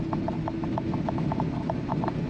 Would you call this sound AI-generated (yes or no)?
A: no